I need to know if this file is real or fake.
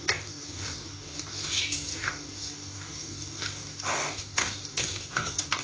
fake